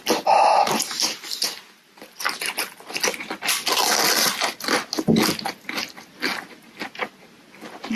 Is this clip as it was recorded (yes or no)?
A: yes